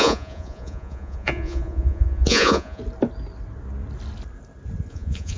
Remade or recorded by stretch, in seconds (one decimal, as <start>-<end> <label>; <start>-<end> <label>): 0.0-2.8 remade; 2.8-4.9 recorded; 4.9-5.4 remade